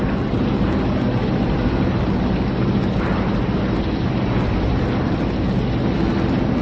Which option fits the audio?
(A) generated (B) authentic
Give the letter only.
B